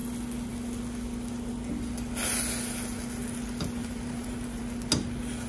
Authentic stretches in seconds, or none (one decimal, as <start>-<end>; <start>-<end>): 0.0-3.8; 4.6-5.5